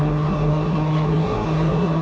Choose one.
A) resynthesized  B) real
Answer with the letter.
A